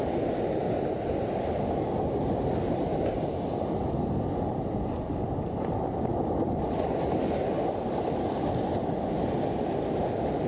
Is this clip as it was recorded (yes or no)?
yes